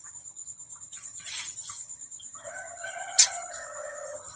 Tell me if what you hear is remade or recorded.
remade